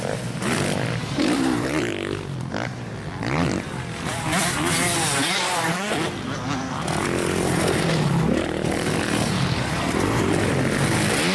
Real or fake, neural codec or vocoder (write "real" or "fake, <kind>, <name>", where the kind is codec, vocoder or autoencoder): real